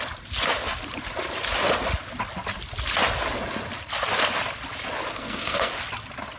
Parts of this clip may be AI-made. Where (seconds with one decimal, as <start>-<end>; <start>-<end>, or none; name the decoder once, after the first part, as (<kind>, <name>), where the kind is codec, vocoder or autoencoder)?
5.1-5.7 (codec, SNAC)